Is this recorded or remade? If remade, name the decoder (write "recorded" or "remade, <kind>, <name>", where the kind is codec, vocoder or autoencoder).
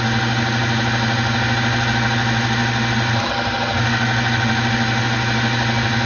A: recorded